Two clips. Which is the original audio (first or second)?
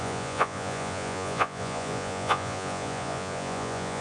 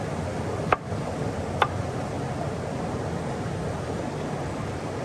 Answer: second